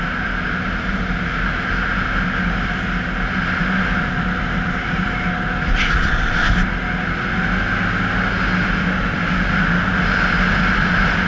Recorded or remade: recorded